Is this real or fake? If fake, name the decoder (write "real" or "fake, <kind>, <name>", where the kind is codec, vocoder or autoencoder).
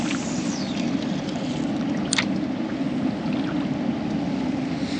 real